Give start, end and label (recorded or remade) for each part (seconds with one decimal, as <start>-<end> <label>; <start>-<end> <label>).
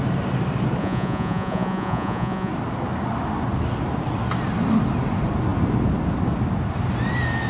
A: 0.0-0.8 recorded; 0.8-2.5 remade; 2.5-7.5 recorded